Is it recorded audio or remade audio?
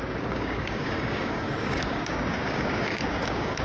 remade